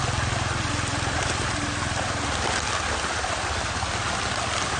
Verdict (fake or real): real